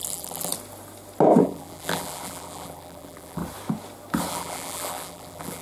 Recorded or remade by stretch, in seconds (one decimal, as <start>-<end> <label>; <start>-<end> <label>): 0.0-0.5 remade; 0.5-1.4 recorded; 1.4-3.4 remade; 3.4-4.3 recorded; 4.3-5.6 remade